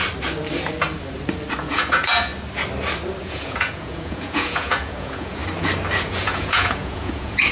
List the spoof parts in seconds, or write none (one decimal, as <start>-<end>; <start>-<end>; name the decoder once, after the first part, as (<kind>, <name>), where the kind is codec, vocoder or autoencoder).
1.6-2.3 (vocoder, Vocos); 3.2-5.4; 6.0-7.5